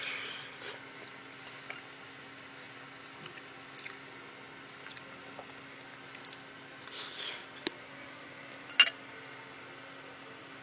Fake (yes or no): no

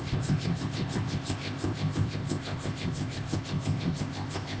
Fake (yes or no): yes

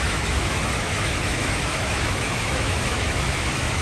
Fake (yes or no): yes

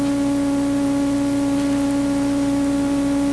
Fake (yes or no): no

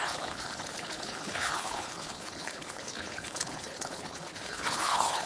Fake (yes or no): yes